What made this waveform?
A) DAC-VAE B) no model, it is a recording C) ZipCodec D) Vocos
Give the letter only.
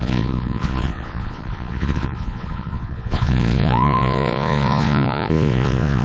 D